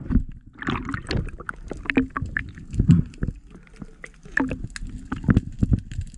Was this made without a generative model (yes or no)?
yes